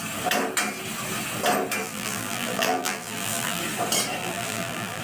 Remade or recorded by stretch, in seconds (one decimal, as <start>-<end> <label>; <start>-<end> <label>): 0.0-1.8 recorded; 1.8-3.6 remade; 3.6-4.2 recorded; 4.2-5.0 remade